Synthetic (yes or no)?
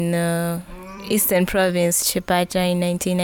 yes